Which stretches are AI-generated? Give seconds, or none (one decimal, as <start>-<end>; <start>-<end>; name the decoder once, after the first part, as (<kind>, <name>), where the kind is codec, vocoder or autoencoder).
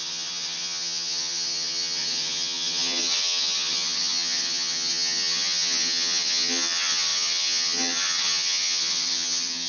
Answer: 0.0-9.7 (vocoder, HiFi-GAN)